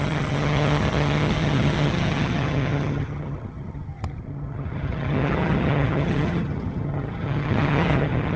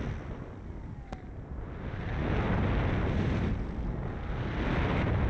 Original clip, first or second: second